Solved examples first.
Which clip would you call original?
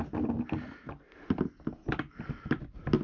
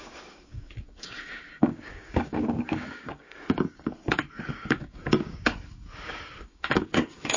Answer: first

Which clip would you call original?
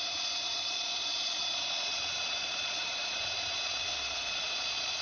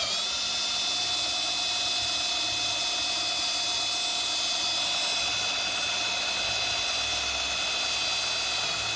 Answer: second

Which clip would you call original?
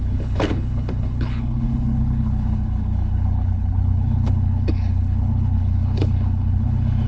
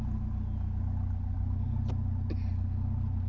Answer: second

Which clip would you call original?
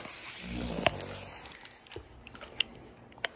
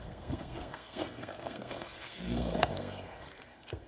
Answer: first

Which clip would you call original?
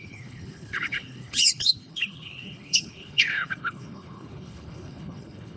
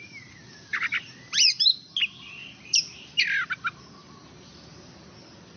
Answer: second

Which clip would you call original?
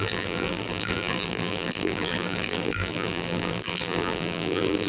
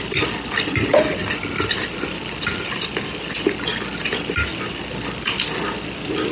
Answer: second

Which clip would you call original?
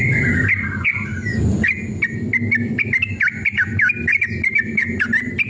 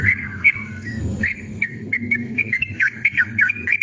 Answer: first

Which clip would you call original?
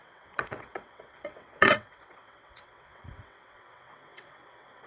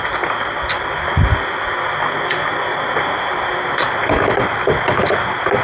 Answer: second